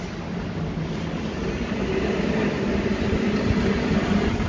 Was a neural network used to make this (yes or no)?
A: no